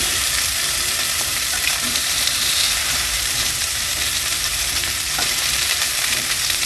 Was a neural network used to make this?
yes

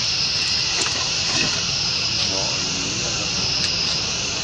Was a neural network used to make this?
no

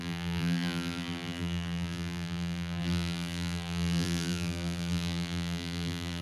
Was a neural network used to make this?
yes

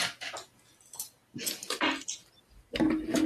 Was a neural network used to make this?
no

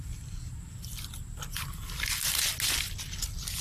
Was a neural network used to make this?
no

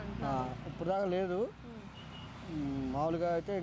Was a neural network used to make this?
no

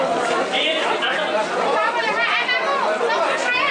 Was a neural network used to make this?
yes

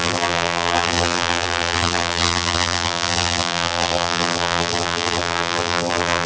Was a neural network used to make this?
yes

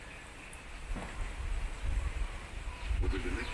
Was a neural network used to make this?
no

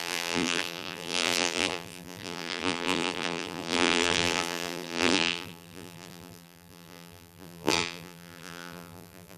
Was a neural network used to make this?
yes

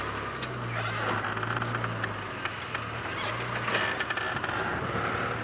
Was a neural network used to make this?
no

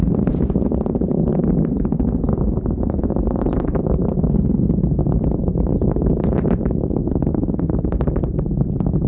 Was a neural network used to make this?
yes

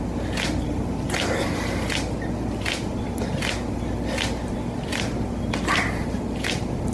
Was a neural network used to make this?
no